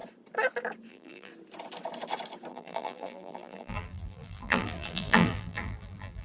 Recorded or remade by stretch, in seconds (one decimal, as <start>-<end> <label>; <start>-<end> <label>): 0.0-0.9 recorded; 0.9-1.3 remade; 1.3-2.5 recorded; 2.5-6.2 remade